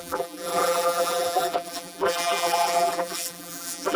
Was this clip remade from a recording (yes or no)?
yes